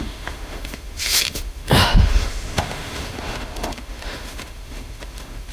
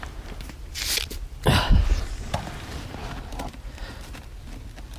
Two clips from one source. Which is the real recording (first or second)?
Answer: second